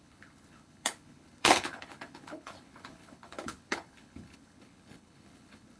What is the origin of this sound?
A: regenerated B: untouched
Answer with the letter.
A